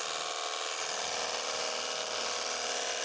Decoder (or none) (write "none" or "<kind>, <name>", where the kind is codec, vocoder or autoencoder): none